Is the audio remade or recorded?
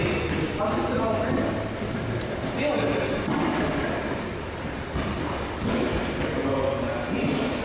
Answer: recorded